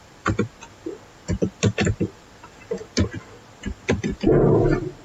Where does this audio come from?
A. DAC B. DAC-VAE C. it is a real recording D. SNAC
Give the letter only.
C